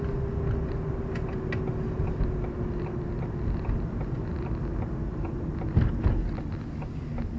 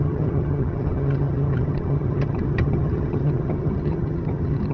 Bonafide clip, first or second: first